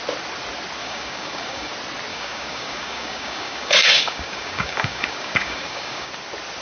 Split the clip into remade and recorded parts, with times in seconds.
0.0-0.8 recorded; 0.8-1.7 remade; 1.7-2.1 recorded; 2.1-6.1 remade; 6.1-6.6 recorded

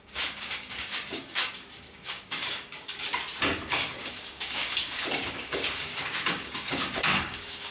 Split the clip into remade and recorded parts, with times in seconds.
0.0-3.1 remade; 3.1-3.7 recorded; 3.7-7.7 remade